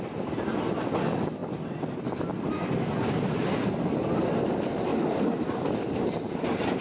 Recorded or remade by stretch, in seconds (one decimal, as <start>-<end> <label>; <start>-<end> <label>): 0.0-6.8 recorded